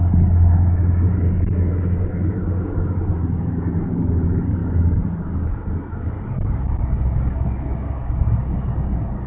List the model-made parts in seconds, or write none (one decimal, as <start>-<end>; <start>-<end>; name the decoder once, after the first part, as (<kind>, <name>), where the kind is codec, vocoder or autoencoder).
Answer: 0.0-9.3 (codec, DAC)

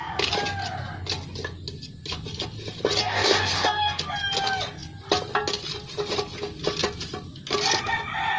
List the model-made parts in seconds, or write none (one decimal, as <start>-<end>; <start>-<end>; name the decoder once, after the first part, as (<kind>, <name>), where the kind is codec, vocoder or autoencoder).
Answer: 3.0-4.0 (codec, DAC)

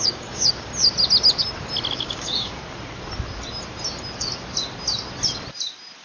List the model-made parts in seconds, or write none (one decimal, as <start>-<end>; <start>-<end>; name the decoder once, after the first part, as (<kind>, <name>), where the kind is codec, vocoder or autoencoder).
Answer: 0.0-0.7 (codec, DAC); 1.9-2.6